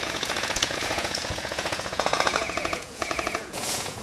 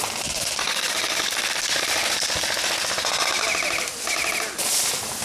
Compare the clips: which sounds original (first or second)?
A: second